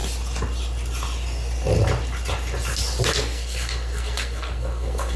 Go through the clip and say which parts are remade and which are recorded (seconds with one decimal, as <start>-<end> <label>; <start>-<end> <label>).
0.0-3.1 recorded; 3.1-5.2 remade